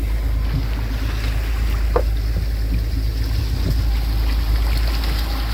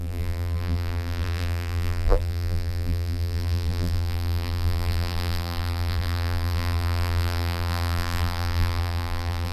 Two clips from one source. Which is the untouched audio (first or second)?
first